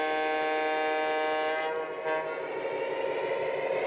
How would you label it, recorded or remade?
recorded